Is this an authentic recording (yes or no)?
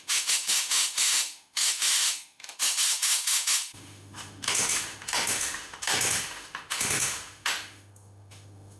no